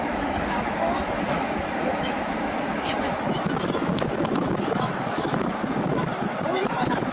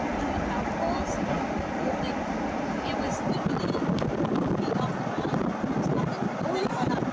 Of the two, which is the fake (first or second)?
first